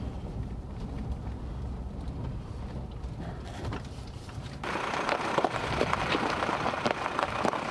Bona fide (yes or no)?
yes